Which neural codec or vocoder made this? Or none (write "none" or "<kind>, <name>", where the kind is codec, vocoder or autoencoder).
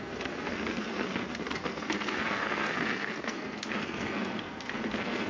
codec, SNAC